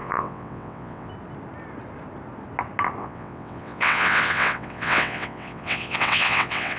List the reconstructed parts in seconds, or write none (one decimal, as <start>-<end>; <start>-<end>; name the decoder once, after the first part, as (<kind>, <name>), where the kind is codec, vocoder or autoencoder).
0.0-1.1 (vocoder, WaveNeXt); 3.0-6.8